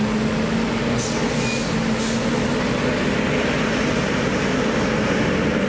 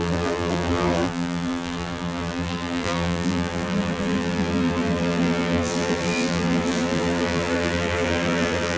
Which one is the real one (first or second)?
first